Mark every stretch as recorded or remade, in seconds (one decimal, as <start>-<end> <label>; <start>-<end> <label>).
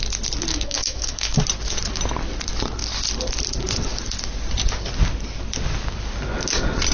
0.0-0.5 recorded; 0.5-1.4 remade; 1.4-6.9 recorded